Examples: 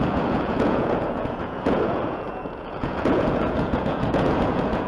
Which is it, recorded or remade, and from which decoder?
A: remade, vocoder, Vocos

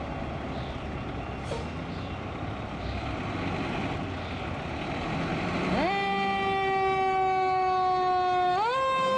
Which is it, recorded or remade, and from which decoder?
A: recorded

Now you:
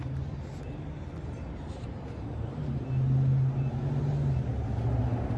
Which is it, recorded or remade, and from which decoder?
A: recorded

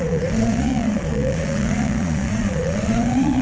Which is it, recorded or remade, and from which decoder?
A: remade, vocoder, Vocos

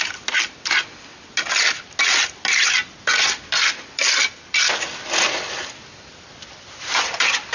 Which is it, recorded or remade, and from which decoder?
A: recorded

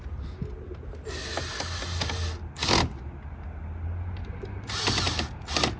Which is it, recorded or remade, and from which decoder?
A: recorded